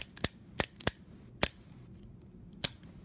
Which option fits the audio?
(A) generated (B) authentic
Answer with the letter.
B